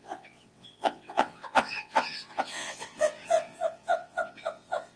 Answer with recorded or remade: remade